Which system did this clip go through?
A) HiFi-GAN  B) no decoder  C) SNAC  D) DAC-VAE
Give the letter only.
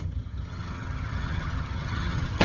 A